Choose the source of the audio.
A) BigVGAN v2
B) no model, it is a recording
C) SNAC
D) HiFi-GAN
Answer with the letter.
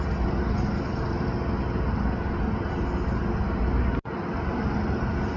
B